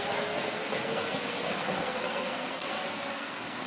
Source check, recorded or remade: remade